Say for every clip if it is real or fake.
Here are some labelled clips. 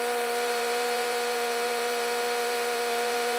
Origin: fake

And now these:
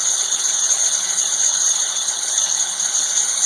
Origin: fake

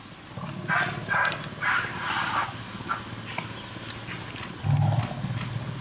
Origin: real